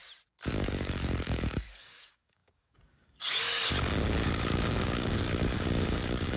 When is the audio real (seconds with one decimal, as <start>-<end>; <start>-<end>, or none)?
0.0-0.5